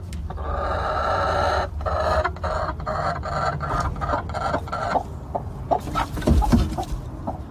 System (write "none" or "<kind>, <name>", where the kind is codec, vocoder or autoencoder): none